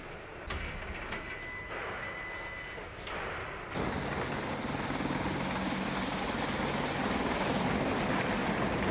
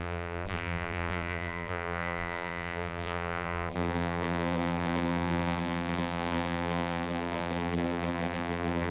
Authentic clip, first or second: first